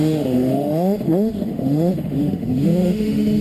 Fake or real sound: fake